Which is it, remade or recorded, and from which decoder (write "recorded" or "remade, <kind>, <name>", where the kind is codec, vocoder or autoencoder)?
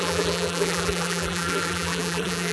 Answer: remade, vocoder, BigVGAN v2